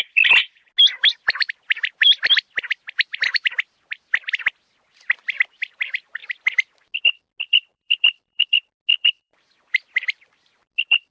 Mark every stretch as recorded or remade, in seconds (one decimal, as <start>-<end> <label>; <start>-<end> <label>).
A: 0.0-7.7 recorded; 7.7-8.4 remade; 8.4-8.9 recorded; 8.9-10.6 remade; 10.6-11.1 recorded